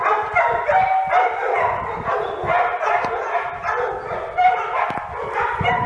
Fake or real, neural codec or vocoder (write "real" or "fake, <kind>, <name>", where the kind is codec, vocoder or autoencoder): real